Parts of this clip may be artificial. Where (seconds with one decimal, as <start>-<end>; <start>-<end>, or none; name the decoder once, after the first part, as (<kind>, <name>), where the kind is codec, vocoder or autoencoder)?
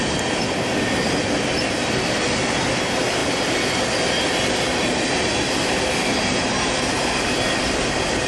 none